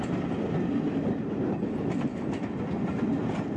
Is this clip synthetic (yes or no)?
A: no